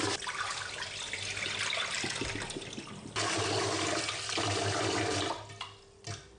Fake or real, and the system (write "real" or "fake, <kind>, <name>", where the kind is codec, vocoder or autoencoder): real